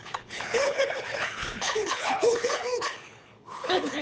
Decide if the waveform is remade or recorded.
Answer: remade